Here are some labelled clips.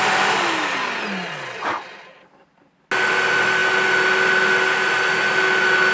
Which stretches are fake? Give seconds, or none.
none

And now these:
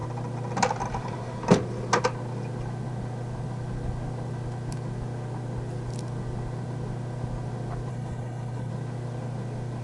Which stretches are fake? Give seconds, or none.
7.9-8.7 (codec, HILCodec)

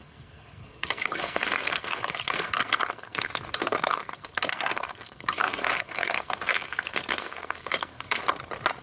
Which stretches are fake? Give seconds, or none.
0.0-8.2 (codec, SNAC)

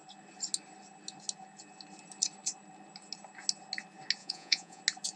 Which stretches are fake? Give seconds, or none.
4.2-4.8 (vocoder, Vocos)

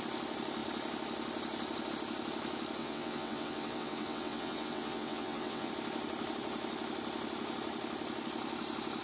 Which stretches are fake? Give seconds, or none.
2.8-5.7 (vocoder, WaveNeXt)

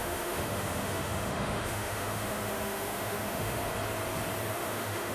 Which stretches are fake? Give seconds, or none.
0.0-3.6 (autoencoder, DAC-VAE); 4.5-5.1